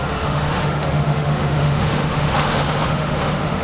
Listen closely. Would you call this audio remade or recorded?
remade